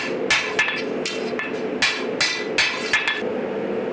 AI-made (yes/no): no